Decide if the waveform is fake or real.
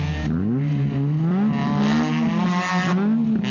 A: real